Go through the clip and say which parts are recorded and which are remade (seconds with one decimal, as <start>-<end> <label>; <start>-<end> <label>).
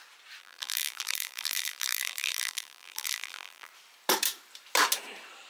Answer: 0.0-0.4 recorded; 0.4-3.7 remade; 3.7-5.5 recorded